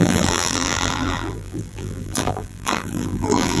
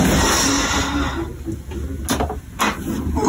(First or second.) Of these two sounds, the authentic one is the second